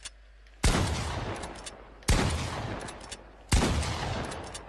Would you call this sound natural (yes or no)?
yes